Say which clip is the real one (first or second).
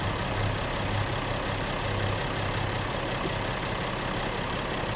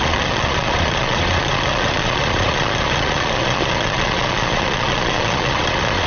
first